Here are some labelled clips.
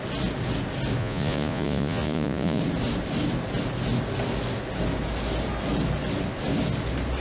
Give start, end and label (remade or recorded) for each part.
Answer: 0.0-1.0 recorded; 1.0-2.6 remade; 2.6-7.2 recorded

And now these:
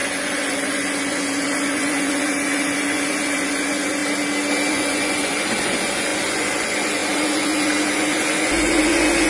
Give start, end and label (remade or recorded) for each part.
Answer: 0.0-4.0 remade; 4.0-4.7 recorded; 4.7-9.3 remade

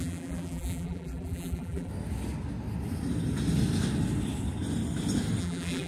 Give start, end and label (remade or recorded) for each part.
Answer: 0.0-1.9 remade; 1.9-5.4 recorded; 5.4-5.9 remade

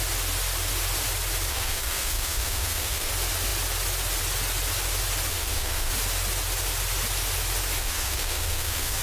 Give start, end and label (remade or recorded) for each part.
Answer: 0.0-1.5 recorded; 1.5-3.1 remade; 3.1-5.3 recorded; 5.3-5.9 remade; 5.9-7.8 recorded; 7.8-9.0 remade

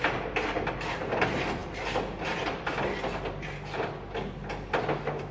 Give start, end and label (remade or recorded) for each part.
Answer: 0.0-5.3 recorded

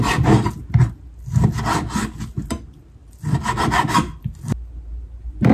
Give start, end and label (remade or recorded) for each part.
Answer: 0.0-5.5 recorded

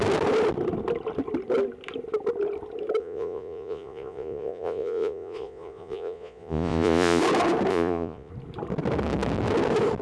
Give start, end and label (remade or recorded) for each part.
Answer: 0.0-3.0 recorded; 3.0-7.2 remade; 7.2-7.7 recorded; 7.7-8.3 remade; 8.3-10.0 recorded

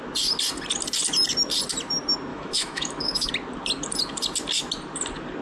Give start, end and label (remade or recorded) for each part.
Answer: 0.0-2.3 recorded; 2.3-3.3 remade; 3.3-5.4 recorded